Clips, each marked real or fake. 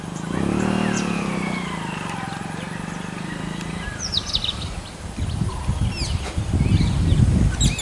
real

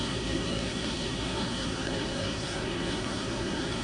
fake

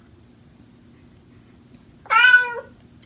real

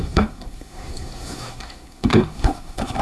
fake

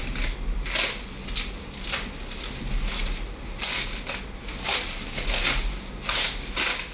real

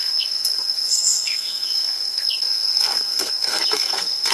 fake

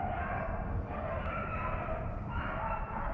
real